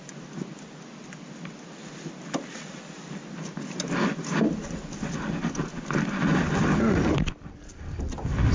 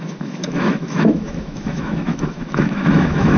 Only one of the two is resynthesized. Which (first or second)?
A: second